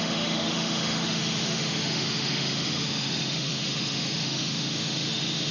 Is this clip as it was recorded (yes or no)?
no